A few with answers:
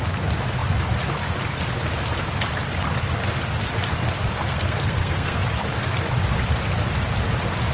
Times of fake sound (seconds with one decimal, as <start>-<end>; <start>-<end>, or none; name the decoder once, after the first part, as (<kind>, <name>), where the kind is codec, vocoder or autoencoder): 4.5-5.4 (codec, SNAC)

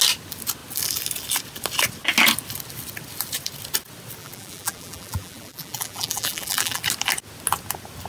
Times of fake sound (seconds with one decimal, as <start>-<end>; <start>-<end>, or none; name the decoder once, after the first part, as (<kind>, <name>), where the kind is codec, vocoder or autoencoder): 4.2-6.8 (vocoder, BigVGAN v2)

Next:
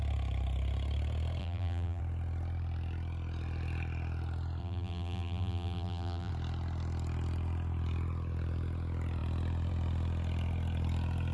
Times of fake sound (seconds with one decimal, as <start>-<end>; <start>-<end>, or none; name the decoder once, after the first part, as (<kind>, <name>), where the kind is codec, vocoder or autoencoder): 1.4-2.0 (vocoder, BigVGAN v2); 4.6-6.3